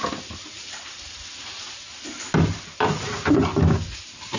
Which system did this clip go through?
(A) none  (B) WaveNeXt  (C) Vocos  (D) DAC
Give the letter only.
A